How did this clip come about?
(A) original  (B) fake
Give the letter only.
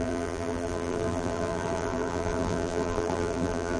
B